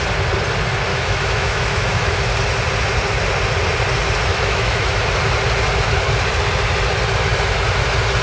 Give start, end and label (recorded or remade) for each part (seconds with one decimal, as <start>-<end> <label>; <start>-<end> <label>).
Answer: 0.0-0.9 recorded; 0.9-2.2 remade; 2.2-4.3 recorded; 4.3-5.0 remade; 5.0-8.2 recorded